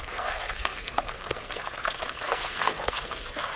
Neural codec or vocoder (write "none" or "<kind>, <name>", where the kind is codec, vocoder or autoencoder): codec, SNAC